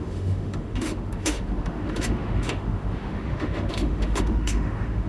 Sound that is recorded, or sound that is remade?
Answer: remade